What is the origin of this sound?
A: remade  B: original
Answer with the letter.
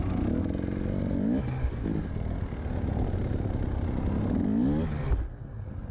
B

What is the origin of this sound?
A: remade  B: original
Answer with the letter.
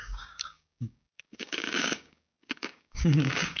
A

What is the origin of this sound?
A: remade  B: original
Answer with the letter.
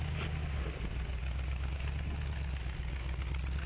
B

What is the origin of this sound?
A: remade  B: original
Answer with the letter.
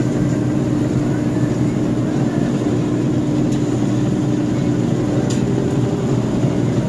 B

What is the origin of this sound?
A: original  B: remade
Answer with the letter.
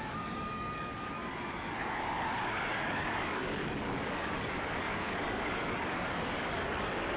B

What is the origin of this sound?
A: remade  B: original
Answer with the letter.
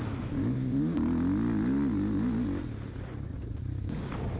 B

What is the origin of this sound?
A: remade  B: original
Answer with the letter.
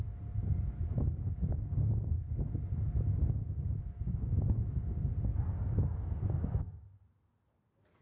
B